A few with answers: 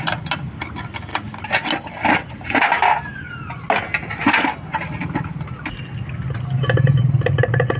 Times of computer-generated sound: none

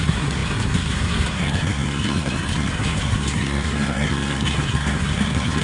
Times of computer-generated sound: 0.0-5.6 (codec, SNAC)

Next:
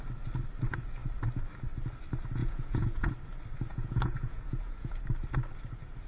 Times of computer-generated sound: 2.4-3.1 (vocoder, Vocos); 3.7-5.0